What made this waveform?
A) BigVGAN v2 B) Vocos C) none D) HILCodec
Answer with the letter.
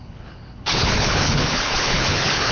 D